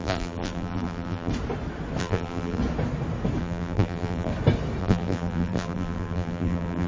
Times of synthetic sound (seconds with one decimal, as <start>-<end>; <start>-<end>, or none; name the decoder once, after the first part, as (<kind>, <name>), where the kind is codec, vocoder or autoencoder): 0.0-1.3 (vocoder, BigVGAN v2); 2.0-2.6; 3.4-4.3; 4.8-6.9